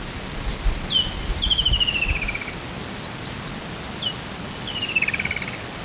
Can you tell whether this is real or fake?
real